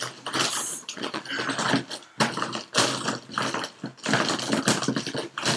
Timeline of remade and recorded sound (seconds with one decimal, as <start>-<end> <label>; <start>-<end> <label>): 0.0-0.7 recorded; 0.7-1.2 remade; 1.2-5.6 recorded